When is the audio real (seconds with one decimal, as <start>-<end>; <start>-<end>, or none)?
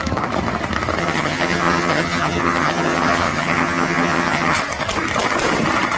0.0-1.0; 4.6-6.0